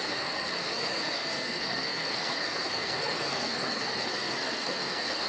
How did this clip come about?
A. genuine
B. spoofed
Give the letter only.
B